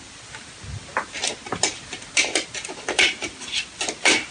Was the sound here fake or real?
real